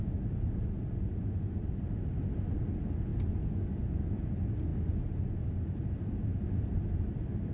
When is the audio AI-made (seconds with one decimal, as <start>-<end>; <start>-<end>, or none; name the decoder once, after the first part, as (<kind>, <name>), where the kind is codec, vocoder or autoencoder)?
none